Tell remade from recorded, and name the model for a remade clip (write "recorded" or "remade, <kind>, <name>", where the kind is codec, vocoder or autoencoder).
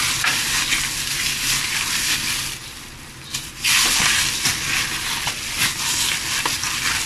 recorded